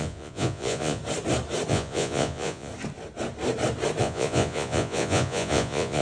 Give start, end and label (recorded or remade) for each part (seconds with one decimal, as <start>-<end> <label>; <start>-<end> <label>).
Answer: 0.0-1.0 remade; 1.0-1.7 recorded; 1.7-2.7 remade; 2.7-4.0 recorded; 4.0-6.0 remade